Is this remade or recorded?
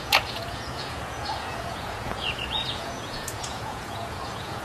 remade